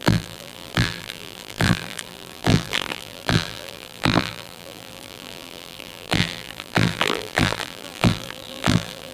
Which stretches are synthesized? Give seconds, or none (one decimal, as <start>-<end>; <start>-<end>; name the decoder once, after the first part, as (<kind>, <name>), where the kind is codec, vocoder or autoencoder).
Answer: 0.0-9.1 (vocoder, BigVGAN v2)